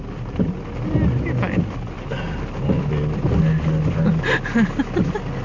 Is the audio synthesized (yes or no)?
no